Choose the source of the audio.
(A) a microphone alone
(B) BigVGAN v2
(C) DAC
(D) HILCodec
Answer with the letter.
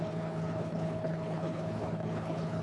D